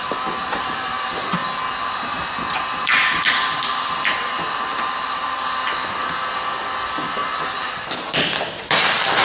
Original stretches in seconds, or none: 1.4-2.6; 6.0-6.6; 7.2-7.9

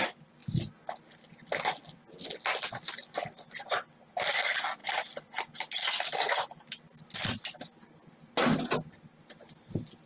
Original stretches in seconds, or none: 0.0-10.1

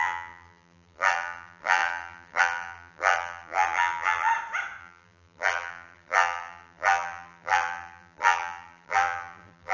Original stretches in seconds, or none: 4.3-4.8

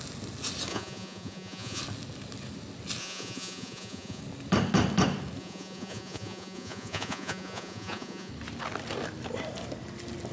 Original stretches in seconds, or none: 0.0-0.7; 1.8-3.0; 4.2-5.4; 8.3-10.3

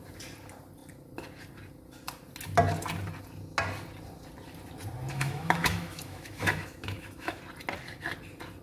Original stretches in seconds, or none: 0.0-5.1; 7.4-8.6

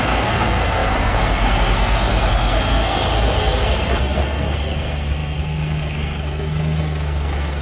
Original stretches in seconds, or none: none

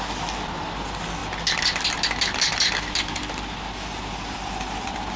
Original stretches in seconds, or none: 0.0-5.2

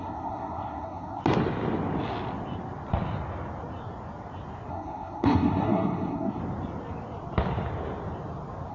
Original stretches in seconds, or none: 1.2-4.7; 6.4-8.7